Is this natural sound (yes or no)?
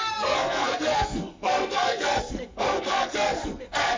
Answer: no